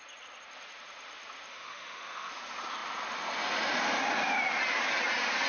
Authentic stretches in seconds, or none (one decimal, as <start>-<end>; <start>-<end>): 0.0-1.5; 2.3-5.5